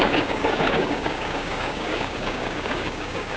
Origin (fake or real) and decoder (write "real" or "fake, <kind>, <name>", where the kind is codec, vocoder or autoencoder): fake, codec, DAC